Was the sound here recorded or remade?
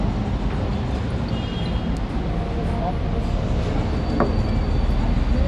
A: recorded